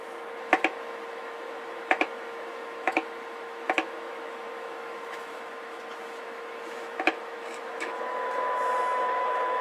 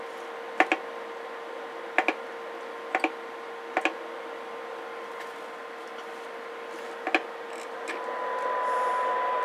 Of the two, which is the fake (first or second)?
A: first